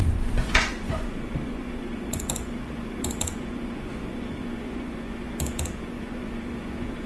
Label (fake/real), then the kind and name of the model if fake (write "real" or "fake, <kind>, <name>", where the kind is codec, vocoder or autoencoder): fake, vocoder, Vocos